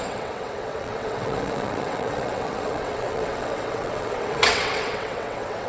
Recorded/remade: remade